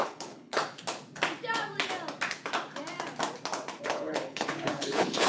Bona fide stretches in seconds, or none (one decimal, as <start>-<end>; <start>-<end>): 0.6-3.8